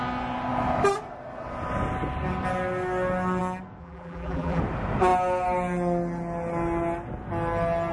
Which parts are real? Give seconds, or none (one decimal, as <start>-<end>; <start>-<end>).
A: 0.0-3.8; 4.6-7.9